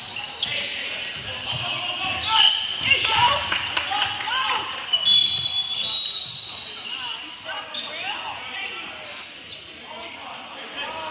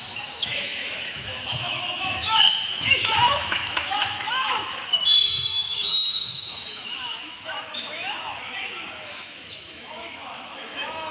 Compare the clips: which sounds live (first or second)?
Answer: first